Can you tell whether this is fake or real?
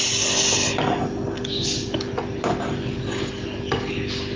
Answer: real